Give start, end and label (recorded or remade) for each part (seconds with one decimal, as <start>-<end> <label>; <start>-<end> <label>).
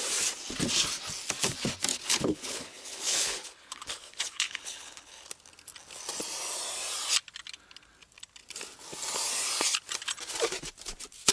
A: 0.0-1.9 recorded; 1.9-5.3 remade; 5.3-11.3 recorded